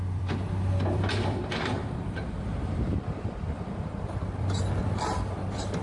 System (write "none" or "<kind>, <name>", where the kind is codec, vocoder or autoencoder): vocoder, BigVGAN v2